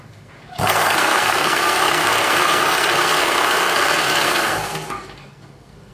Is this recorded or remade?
remade